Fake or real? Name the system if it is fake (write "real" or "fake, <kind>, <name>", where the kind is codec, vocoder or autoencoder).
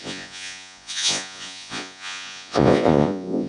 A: fake, vocoder, Vocos